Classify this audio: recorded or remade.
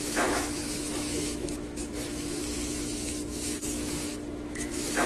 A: remade